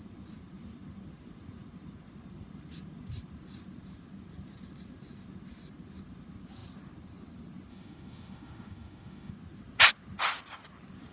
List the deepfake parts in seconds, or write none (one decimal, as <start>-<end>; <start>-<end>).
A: 7.7-9.3